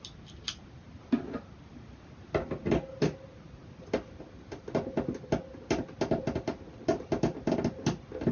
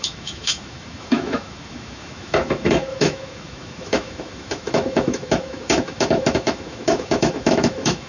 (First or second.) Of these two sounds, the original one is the first